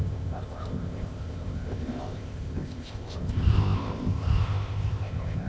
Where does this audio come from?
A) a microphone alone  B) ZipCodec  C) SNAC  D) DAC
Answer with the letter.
B